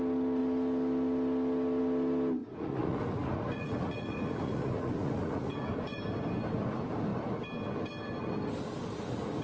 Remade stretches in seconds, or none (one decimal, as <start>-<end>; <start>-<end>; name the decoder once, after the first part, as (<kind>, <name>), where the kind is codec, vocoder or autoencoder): 2.4-6.0 (vocoder, Vocos)